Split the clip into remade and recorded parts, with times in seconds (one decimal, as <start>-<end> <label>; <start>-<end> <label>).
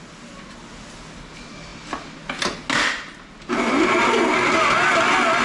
0.0-5.4 recorded